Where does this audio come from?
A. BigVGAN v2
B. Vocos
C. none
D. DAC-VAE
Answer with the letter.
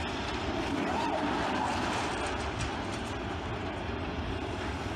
C